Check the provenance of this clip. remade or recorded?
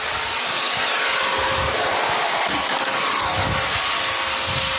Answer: recorded